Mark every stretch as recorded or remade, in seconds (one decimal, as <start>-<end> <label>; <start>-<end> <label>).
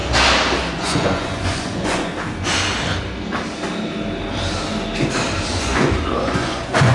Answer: 0.0-0.7 recorded; 0.7-2.1 remade; 2.1-5.5 recorded; 5.5-6.9 remade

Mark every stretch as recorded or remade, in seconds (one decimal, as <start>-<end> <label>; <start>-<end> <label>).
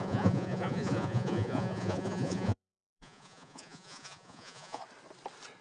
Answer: 0.0-4.8 remade; 4.8-5.6 recorded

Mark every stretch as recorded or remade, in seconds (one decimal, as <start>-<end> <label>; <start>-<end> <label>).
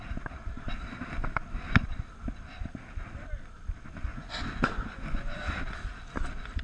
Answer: 0.0-4.1 recorded; 4.1-5.4 remade; 5.4-6.6 recorded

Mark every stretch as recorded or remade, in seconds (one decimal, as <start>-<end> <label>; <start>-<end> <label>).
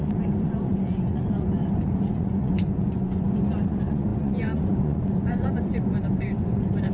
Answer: 0.0-6.9 remade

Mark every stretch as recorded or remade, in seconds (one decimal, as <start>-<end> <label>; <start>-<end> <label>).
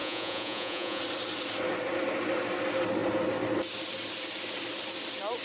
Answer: 0.0-1.0 remade; 1.0-5.4 recorded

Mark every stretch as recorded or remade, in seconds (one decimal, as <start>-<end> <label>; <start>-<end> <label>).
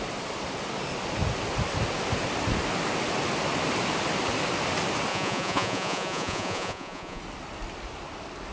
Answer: 0.0-5.1 recorded; 5.1-7.2 remade; 7.2-8.5 recorded